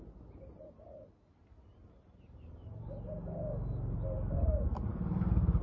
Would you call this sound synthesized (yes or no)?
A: no